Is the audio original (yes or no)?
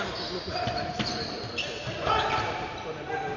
yes